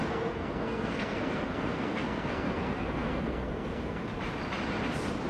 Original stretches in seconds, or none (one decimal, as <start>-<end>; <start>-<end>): 4.1-5.3